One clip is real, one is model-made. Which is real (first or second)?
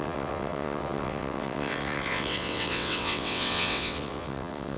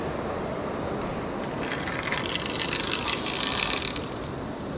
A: second